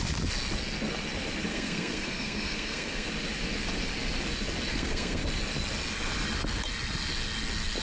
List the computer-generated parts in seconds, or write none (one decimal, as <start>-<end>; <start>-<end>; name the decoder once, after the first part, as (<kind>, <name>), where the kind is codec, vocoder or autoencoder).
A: 1.5-3.1 (codec, SNAC); 4.7-5.2